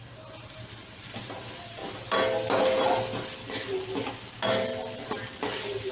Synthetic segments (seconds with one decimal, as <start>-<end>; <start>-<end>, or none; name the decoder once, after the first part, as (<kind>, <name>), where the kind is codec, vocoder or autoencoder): none